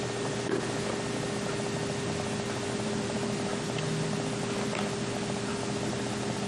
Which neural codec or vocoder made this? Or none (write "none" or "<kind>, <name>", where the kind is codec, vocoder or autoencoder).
none